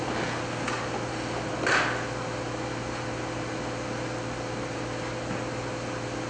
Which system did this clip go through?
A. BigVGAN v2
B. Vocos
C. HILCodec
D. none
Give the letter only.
D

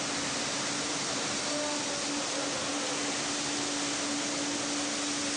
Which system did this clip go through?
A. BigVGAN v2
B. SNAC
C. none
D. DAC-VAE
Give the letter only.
C